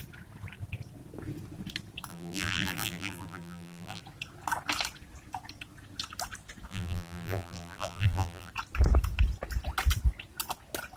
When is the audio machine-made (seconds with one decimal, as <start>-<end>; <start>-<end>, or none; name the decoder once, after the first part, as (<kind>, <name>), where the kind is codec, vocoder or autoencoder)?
2.1-4.0 (vocoder, BigVGAN v2); 6.7-8.5

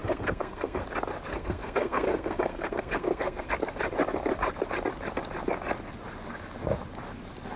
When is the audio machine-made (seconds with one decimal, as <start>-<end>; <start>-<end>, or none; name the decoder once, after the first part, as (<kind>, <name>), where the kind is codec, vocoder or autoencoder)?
0.0-0.8 (codec, SNAC); 1.3-3.5